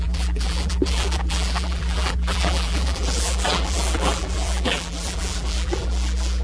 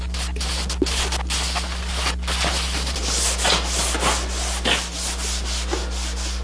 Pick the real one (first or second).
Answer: second